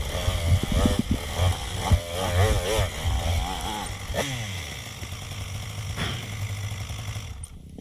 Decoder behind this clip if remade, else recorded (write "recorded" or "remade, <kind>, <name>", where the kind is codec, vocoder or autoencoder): recorded